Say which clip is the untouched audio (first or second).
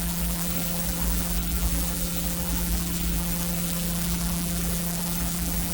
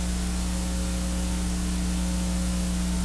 second